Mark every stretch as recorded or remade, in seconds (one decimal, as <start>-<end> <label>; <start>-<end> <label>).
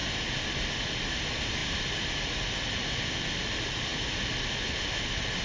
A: 0.0-5.4 recorded